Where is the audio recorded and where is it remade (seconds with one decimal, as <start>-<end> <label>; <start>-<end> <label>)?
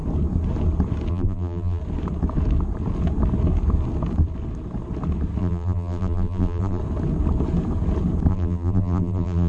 0.0-1.1 recorded; 1.1-1.8 remade; 1.8-5.4 recorded; 5.4-6.8 remade; 6.8-8.3 recorded; 8.3-9.5 remade